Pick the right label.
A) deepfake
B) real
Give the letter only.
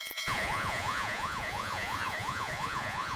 A